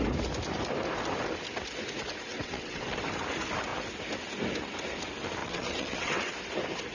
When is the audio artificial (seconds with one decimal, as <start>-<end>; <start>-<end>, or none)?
2.3-3.0; 5.4-6.3